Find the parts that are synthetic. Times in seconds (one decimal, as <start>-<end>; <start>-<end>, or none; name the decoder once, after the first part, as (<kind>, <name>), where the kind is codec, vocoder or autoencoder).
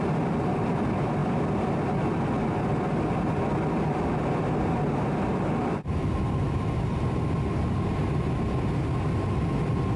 none